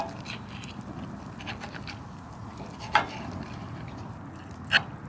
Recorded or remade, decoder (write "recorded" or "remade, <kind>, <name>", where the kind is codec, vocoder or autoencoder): recorded